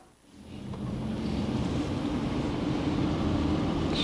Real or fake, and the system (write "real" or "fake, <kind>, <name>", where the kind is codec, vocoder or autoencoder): real